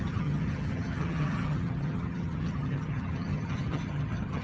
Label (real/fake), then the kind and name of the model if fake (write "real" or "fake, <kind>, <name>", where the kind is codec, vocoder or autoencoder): fake, vocoder, HiFi-GAN